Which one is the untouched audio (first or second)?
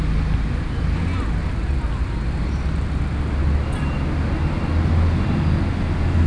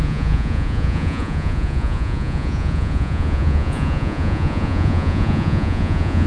first